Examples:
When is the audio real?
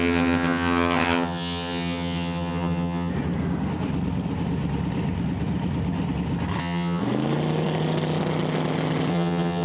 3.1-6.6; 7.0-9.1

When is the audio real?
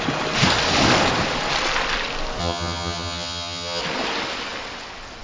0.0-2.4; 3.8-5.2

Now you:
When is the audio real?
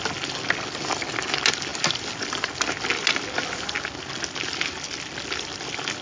0.0-6.0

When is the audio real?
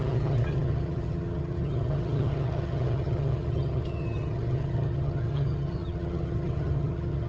none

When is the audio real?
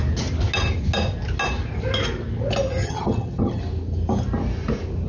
0.0-2.8; 3.6-5.1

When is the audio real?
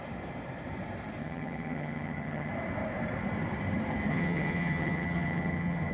0.0-1.2; 2.5-4.1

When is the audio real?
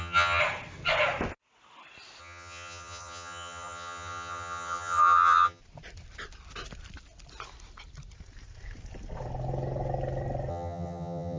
0.4-2.2; 5.6-10.5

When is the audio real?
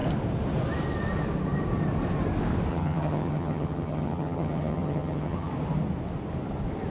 0.0-2.7; 5.5-6.9